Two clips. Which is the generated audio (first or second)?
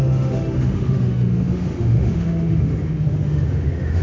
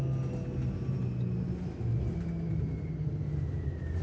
first